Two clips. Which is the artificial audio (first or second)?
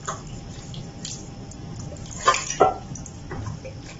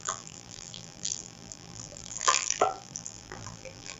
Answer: second